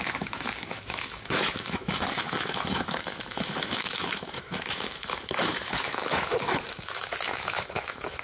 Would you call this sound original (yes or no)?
no